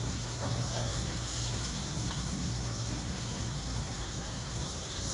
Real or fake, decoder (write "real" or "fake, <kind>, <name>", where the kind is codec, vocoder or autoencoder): fake, codec, SNAC